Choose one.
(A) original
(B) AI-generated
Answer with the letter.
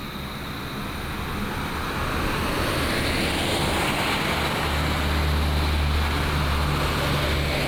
A